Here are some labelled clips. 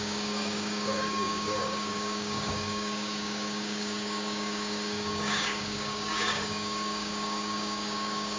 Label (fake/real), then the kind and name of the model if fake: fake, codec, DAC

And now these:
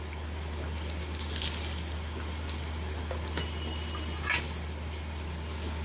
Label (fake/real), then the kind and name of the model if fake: real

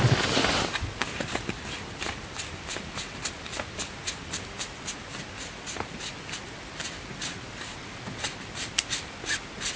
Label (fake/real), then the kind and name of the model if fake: real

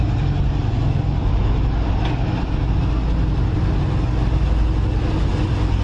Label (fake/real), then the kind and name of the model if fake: real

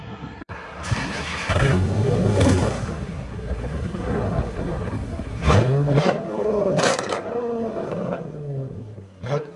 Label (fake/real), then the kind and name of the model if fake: fake, codec, SNAC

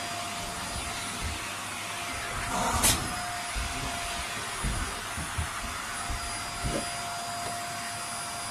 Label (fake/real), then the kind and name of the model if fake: real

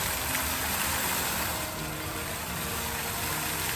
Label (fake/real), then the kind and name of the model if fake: real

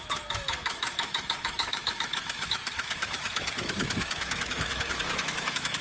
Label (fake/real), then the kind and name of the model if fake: fake, autoencoder, DAC-VAE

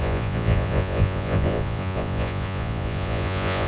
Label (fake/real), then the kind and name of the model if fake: fake, vocoder, Vocos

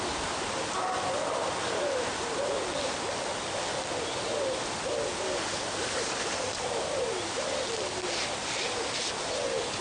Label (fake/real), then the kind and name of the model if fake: real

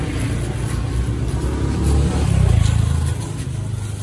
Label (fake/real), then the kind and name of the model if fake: real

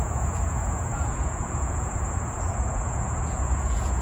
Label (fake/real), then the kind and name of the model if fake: fake, vocoder, Vocos